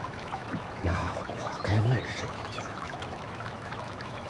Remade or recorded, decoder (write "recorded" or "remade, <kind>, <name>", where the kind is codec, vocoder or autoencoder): remade, autoencoder, DAC-VAE